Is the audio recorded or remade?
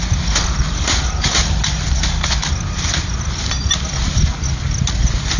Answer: recorded